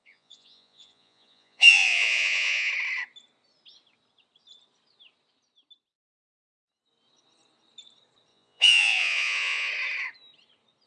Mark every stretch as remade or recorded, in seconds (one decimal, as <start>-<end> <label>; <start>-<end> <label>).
0.0-2.7 remade; 2.7-8.3 recorded; 8.3-9.7 remade; 9.7-10.9 recorded